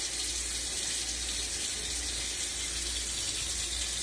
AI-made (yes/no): no